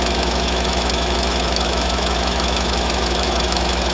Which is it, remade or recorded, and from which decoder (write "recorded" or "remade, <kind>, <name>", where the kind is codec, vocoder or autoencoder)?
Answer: remade, autoencoder, DAC-VAE